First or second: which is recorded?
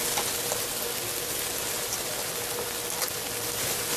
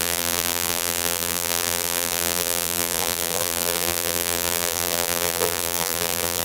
first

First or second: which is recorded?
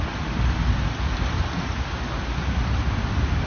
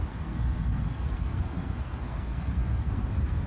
first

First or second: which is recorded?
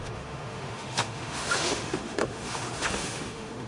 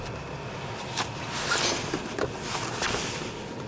second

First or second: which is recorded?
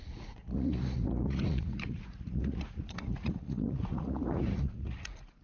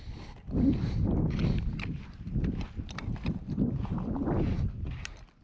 second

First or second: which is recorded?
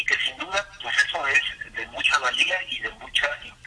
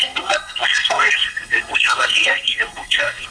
first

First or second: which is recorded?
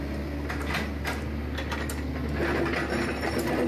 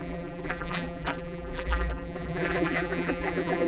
first